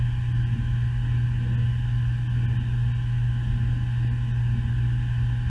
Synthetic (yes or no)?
no